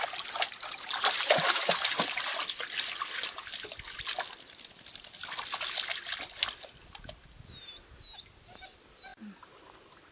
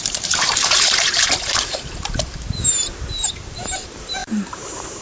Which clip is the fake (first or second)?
second